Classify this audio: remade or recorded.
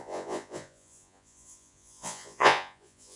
remade